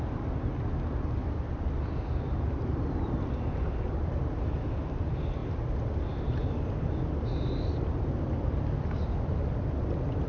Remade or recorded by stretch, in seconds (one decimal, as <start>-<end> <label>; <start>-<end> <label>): 0.0-10.3 recorded

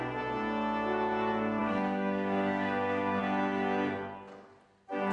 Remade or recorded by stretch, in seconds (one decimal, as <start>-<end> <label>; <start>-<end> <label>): 0.0-1.6 recorded; 1.6-3.2 remade; 3.2-5.1 recorded

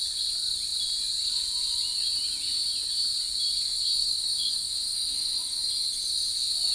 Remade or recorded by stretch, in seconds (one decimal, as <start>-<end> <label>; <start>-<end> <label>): 0.0-4.0 recorded; 4.0-5.7 remade; 5.7-6.7 recorded

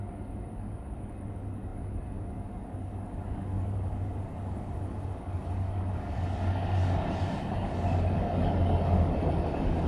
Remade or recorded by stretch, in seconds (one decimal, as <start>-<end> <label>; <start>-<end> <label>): 0.0-9.9 remade